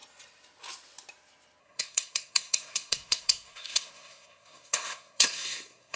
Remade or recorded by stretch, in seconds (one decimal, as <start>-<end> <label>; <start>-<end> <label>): 0.0-1.6 recorded; 1.6-6.0 remade